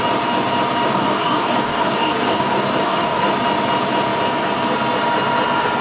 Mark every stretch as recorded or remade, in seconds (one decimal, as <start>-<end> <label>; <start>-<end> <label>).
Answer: 0.0-0.9 recorded; 0.9-3.3 remade; 3.3-5.8 recorded